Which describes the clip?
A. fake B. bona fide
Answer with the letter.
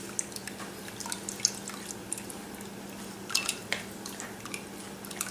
B